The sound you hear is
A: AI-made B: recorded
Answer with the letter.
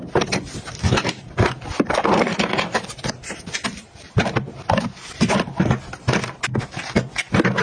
B